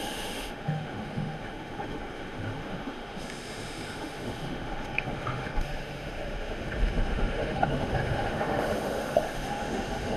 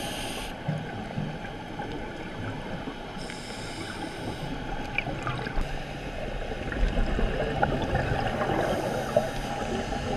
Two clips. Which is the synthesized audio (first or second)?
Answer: first